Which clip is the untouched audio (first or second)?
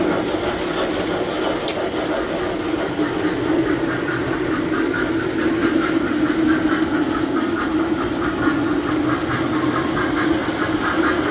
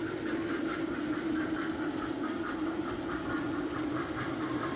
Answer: first